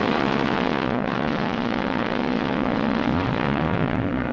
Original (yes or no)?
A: no